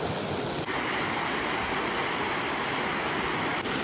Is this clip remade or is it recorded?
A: recorded